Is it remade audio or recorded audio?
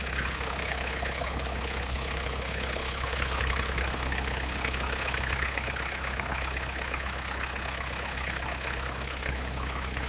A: remade